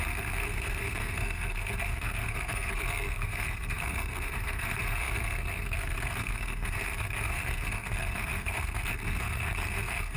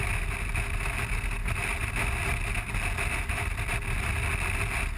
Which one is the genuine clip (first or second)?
second